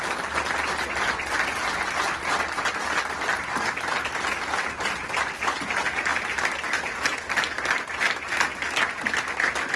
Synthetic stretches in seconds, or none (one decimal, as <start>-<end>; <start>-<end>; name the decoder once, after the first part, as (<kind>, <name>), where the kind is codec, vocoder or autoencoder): none